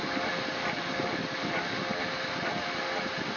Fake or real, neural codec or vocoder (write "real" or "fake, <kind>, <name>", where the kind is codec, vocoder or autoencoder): real